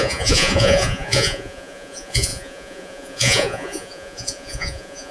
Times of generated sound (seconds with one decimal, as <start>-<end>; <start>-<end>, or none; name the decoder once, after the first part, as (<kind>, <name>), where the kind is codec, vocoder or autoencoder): 0.0-5.1 (vocoder, Vocos)